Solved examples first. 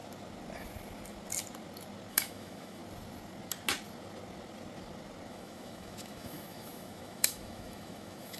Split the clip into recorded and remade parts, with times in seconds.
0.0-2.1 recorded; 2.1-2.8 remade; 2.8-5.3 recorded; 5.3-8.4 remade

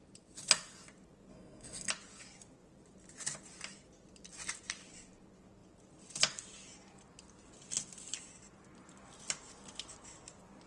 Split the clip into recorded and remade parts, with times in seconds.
0.0-1.3 recorded; 1.3-1.9 remade; 1.9-10.7 recorded

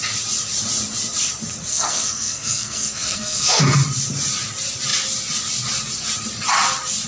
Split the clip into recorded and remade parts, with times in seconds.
0.0-1.7 recorded; 1.7-3.6 remade; 3.6-7.1 recorded